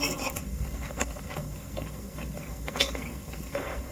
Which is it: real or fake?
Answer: fake